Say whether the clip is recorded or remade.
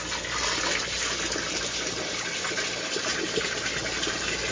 recorded